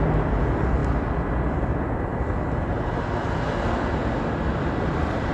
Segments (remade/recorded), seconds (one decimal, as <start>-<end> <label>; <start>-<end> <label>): 0.0-5.3 recorded